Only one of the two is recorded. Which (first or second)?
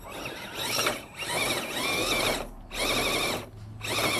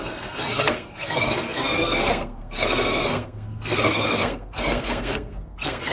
first